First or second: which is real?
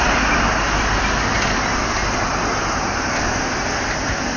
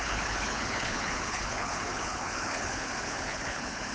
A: first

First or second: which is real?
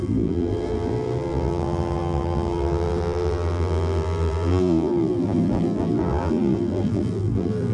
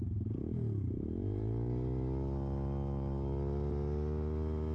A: second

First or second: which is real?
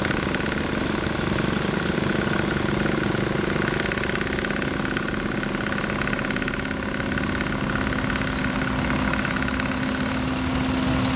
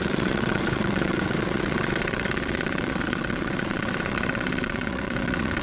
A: first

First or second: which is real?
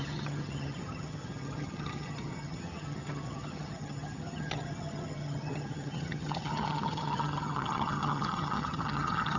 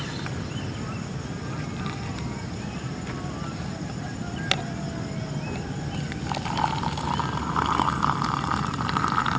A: second